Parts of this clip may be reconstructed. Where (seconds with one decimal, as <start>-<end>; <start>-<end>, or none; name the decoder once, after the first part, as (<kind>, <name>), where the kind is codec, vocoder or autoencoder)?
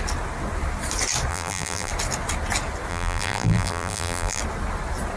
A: 1.3-1.9 (vocoder, BigVGAN v2); 2.9-4.4